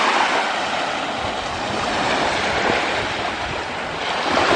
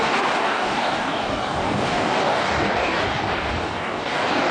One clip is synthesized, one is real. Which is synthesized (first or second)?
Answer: second